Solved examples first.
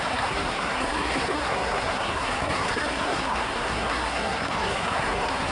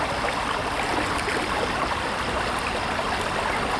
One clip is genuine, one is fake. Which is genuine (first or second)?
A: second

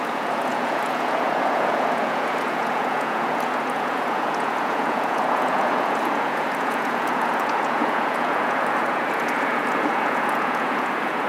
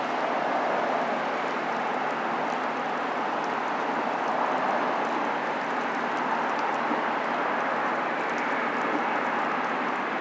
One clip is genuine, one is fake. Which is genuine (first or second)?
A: second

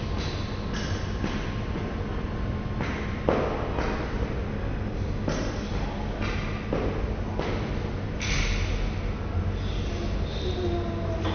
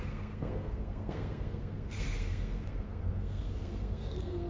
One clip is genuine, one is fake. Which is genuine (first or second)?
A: first